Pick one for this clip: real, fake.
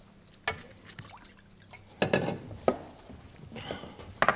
real